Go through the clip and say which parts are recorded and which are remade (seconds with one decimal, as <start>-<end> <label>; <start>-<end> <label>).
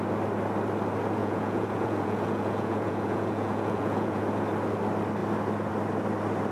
0.0-1.2 recorded; 1.2-4.2 remade; 4.2-6.5 recorded